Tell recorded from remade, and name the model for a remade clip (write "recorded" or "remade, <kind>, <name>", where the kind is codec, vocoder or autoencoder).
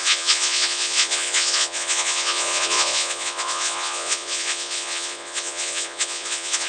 remade, vocoder, Vocos